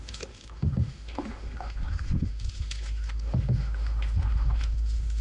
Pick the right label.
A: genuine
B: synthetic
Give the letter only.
B